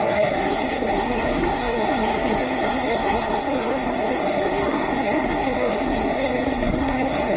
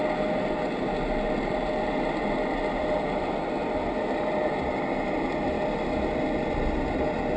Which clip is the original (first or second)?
second